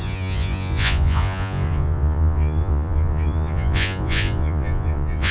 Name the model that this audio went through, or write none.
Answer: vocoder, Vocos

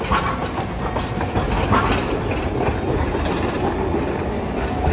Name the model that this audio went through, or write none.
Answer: none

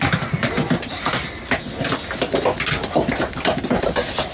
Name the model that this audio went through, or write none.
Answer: none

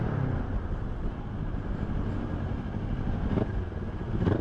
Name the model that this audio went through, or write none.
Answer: none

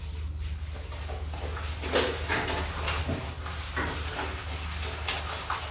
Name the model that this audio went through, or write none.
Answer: none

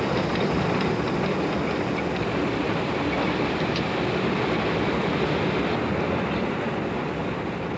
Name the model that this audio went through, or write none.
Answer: none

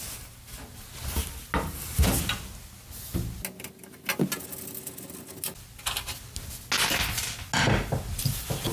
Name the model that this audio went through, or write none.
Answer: none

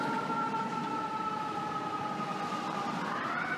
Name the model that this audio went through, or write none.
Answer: none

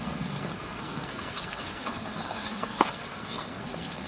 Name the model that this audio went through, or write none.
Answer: codec, SNAC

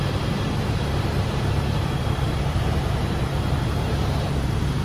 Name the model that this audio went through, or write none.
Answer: vocoder, BigVGAN v2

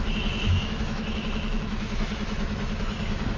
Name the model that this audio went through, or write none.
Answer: autoencoder, DAC-VAE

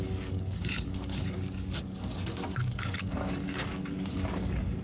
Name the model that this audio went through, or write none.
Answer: codec, DAC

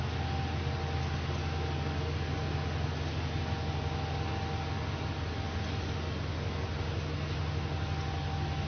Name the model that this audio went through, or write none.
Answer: none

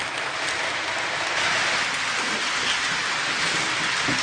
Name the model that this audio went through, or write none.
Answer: none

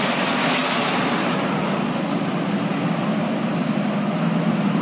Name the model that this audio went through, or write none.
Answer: none